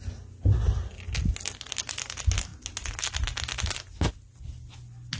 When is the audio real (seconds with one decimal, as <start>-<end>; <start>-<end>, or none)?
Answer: 0.0-5.2